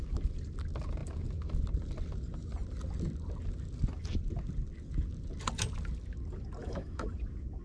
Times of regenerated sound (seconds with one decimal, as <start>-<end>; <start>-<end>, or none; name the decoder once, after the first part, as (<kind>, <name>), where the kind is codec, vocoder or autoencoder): 6.6-7.1 (autoencoder, DAC-VAE)